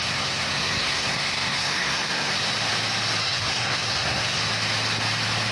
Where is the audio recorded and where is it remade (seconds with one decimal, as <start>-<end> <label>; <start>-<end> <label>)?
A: 0.0-2.3 remade; 2.3-3.2 recorded; 3.2-4.4 remade; 4.4-5.5 recorded

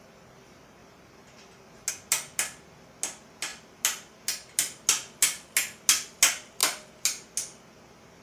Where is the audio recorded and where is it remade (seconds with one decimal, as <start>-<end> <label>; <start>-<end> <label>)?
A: 0.0-8.2 recorded

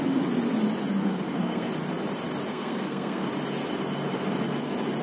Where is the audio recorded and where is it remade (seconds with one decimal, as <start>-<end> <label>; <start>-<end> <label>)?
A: 0.0-1.0 recorded; 1.0-1.7 remade; 1.7-2.5 recorded; 2.5-3.3 remade; 3.3-5.0 recorded

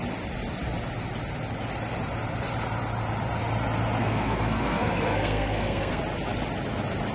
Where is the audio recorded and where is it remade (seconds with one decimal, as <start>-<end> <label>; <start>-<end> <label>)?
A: 0.0-4.0 recorded; 4.0-6.0 remade; 6.0-7.1 recorded

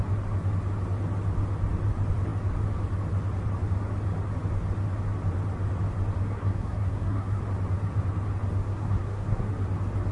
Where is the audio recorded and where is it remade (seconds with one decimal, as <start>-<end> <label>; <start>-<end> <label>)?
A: 0.0-6.3 recorded; 6.3-7.4 remade; 7.4-8.6 recorded; 8.6-9.5 remade; 9.5-10.1 recorded

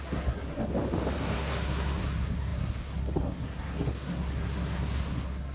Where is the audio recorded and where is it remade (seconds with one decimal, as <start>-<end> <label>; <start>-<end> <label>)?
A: 0.0-0.7 remade; 0.7-1.2 recorded; 1.2-5.5 remade

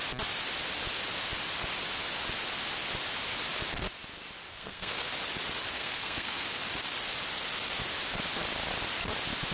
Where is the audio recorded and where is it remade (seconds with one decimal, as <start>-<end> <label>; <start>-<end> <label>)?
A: 0.0-4.5 recorded; 4.5-5.1 remade; 5.1-5.8 recorded; 5.8-6.5 remade; 6.5-9.5 recorded